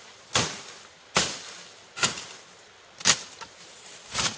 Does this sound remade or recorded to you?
recorded